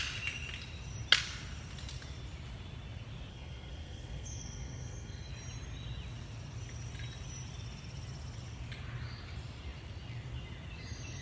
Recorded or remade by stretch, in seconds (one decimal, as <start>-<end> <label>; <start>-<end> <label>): 0.0-3.3 recorded; 3.3-5.3 remade; 5.3-11.2 recorded